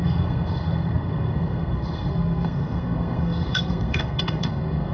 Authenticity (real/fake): fake